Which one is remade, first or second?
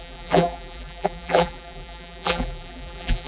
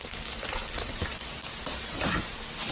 first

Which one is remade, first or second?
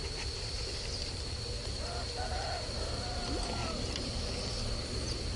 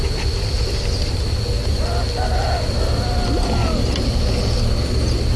first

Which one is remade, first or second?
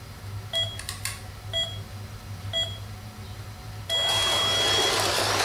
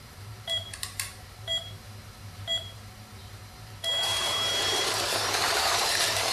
second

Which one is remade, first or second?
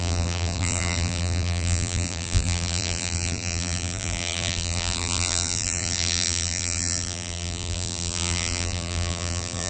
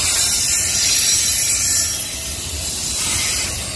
first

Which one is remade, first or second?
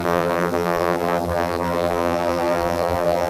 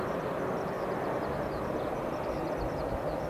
first